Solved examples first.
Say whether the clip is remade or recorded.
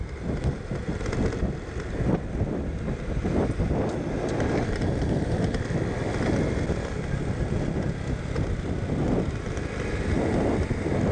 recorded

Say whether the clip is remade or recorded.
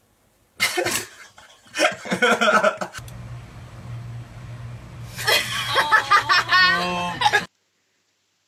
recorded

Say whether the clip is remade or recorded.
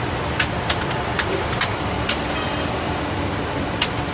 recorded